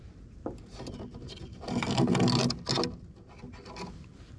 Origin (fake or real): real